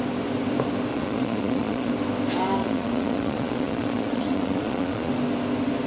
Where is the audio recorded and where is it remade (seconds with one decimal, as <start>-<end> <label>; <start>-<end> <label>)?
0.0-0.9 recorded; 0.9-1.9 remade; 1.9-2.6 recorded; 2.6-5.1 remade; 5.1-5.9 recorded